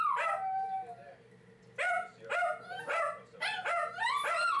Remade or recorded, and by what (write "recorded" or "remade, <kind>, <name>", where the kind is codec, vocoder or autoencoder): recorded